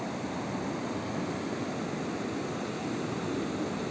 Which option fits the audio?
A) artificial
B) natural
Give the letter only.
B